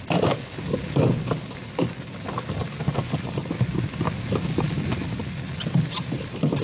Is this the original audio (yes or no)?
yes